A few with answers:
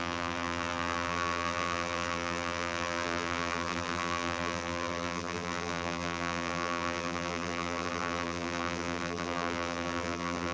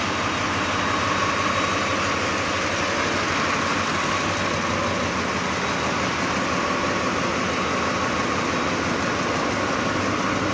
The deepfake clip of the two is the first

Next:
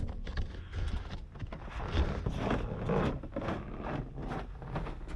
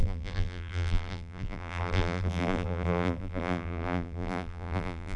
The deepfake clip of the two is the second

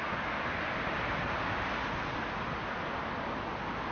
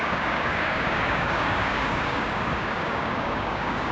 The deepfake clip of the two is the second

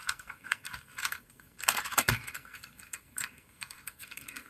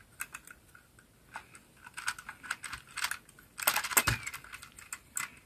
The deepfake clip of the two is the first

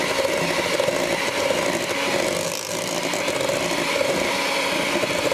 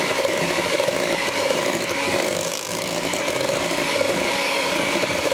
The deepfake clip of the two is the second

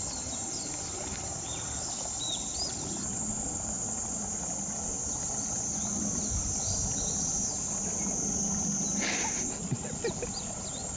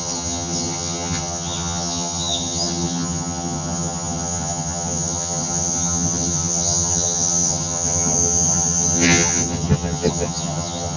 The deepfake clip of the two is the second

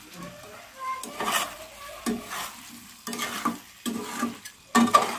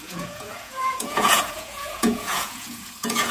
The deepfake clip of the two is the second